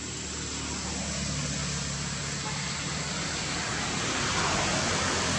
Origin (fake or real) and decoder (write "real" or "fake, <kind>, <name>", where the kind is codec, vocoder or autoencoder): real